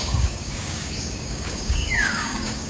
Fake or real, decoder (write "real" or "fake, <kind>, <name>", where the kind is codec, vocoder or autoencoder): fake, codec, DAC